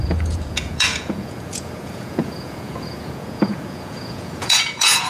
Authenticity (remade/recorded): remade